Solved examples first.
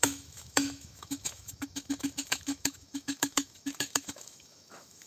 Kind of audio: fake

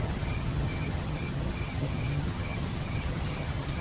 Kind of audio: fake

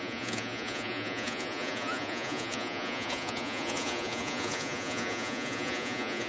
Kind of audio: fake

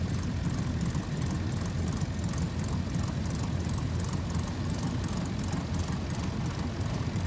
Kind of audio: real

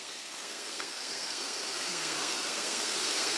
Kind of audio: fake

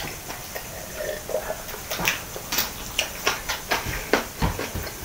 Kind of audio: real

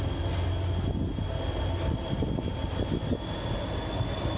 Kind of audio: real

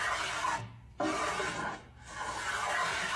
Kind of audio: real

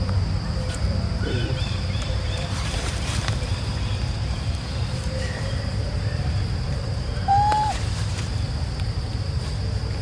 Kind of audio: fake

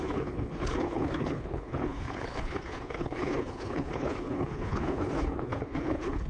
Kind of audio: fake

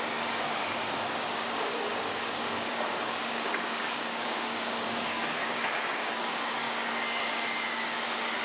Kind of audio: fake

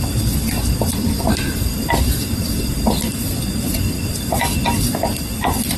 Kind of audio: fake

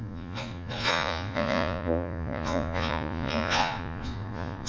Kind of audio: fake